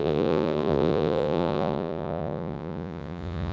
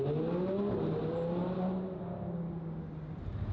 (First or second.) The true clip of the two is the second